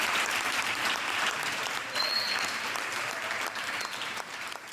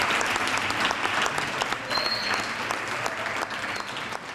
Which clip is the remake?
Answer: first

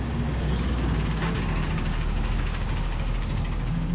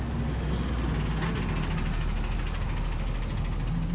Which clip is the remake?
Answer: first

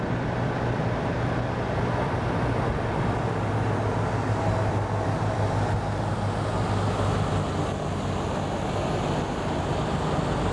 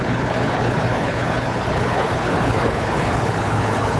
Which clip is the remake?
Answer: second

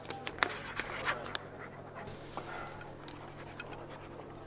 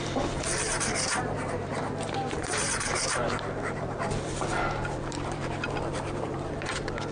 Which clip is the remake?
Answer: second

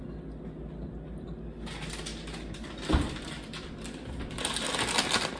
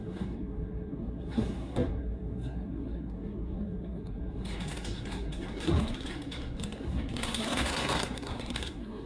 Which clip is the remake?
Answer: second